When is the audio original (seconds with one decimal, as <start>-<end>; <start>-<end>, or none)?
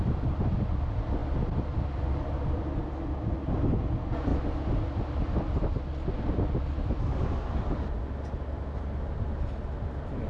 0.0-10.3